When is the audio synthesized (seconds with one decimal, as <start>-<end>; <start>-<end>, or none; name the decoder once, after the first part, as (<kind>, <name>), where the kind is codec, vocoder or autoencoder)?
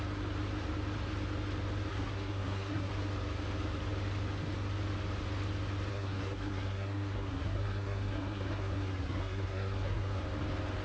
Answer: 1.9-2.9 (codec, SNAC); 5.9-10.2